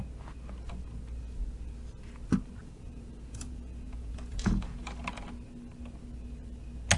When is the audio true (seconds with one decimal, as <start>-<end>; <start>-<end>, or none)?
0.0-2.6; 5.0-7.0

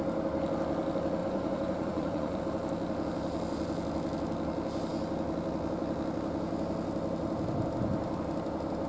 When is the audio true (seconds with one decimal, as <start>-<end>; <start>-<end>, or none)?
0.0-1.2; 2.4-8.9

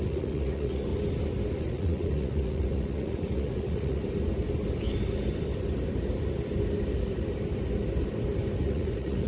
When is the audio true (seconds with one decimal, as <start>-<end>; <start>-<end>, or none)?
0.9-1.6; 4.0-8.6

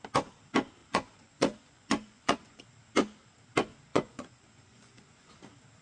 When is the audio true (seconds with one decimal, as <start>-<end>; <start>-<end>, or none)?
0.0-0.8; 2.6-3.9; 5.3-5.8

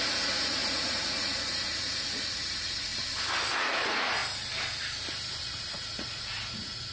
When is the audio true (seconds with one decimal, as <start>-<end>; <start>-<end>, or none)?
2.9-3.5; 4.2-5.4

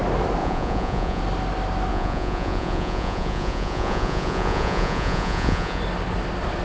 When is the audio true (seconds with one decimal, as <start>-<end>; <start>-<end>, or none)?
0.0-0.4; 1.2-1.9; 5.8-6.6

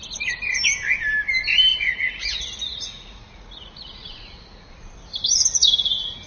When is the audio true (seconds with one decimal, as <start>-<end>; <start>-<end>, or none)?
0.0-1.7; 4.7-5.5

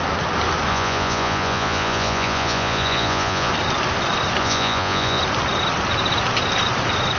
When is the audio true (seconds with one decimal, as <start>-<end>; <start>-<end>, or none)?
0.0-0.7; 3.5-4.4; 5.2-7.2